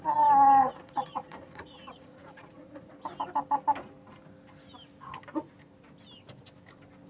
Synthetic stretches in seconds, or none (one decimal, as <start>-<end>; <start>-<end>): 0.6-2.9